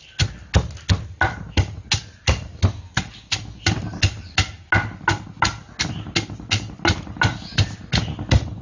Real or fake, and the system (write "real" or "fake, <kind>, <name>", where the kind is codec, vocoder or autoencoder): real